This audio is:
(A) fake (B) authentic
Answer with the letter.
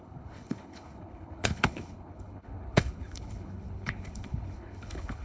A